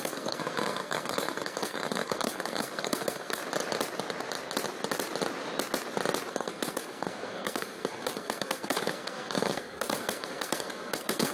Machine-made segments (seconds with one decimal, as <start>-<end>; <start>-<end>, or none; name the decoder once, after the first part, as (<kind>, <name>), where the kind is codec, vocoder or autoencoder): 0.0-3.4 (codec, SNAC); 6.3-11.3